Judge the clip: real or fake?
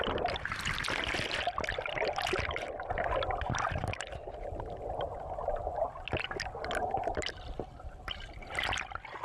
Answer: real